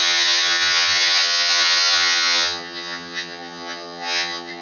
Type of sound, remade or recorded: remade